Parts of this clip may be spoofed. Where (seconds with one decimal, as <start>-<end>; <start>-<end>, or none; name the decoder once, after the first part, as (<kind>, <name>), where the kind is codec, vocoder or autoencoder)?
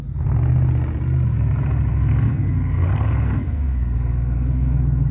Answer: 1.9-5.1 (codec, SNAC)